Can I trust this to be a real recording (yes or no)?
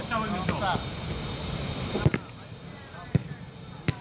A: yes